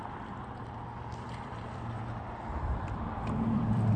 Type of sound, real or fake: fake